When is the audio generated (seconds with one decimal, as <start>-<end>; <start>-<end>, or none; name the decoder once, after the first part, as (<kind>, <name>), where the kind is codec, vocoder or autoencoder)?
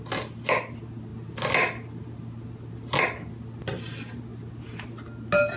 none